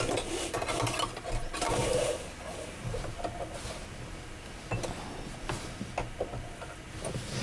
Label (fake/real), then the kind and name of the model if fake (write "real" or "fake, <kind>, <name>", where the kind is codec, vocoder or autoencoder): real